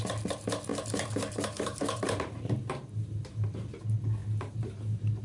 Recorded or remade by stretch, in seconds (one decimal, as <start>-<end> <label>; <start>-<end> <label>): 0.0-0.7 recorded; 0.7-3.8 remade; 3.8-4.2 recorded; 4.2-5.2 remade